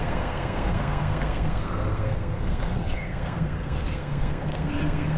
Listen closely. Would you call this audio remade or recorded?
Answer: remade